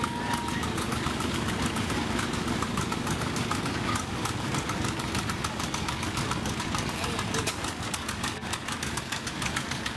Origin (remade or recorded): remade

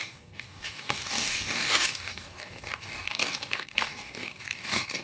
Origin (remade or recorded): remade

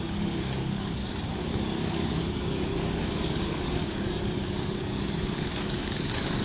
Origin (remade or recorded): remade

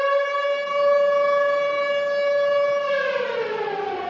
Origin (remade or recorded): recorded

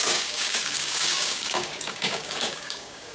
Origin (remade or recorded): remade